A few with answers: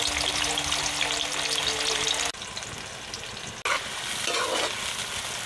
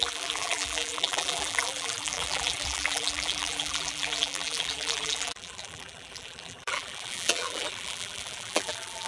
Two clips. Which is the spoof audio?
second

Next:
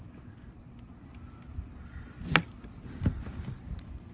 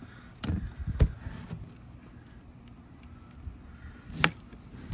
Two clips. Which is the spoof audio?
first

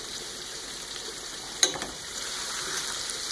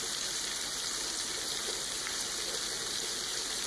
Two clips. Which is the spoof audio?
first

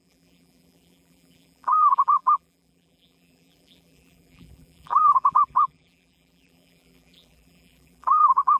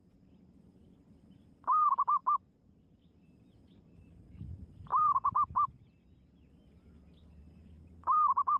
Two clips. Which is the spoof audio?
first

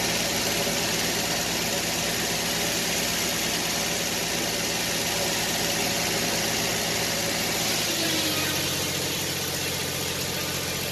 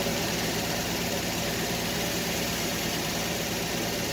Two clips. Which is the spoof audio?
second